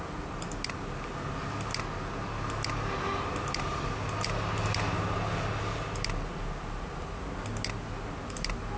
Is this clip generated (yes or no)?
no